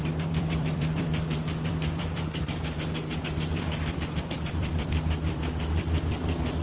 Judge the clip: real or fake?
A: fake